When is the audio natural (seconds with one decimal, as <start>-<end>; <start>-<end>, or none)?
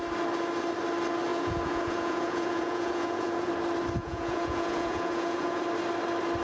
0.0-1.3; 3.5-4.0; 5.6-6.4